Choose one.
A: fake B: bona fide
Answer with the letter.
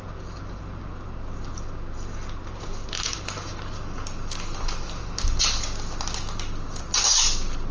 B